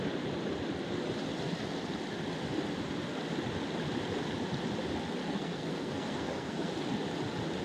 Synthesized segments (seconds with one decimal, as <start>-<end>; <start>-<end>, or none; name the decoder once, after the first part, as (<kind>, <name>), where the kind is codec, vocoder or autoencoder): 5.2-6.7 (codec, SNAC)